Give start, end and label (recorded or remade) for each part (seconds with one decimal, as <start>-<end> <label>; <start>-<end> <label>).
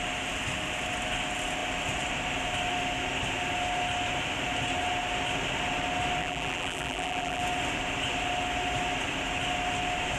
0.0-6.2 recorded; 6.2-7.4 remade; 7.4-10.2 recorded